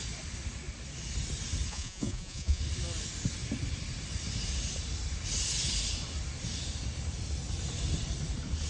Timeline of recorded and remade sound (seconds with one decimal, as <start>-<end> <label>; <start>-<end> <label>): 0.0-1.7 recorded; 1.7-2.6 remade; 2.6-8.7 recorded